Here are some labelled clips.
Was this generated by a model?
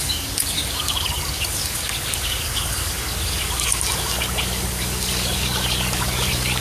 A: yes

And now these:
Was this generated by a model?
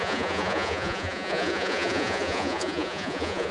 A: yes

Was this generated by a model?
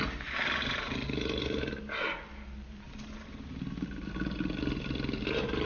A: no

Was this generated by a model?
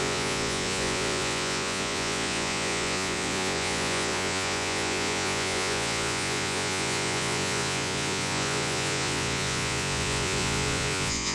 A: yes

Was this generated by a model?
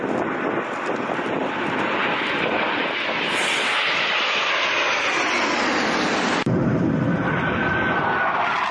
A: no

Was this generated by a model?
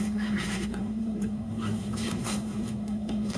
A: yes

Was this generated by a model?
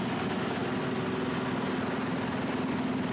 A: no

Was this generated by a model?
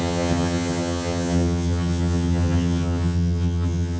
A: yes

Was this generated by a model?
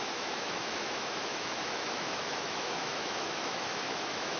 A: yes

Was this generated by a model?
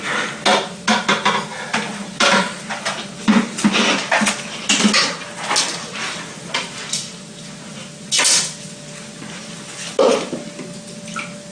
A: no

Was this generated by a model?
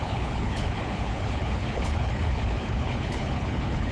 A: yes